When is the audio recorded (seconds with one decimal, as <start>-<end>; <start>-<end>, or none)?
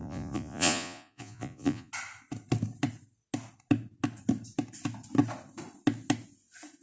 1.9-6.8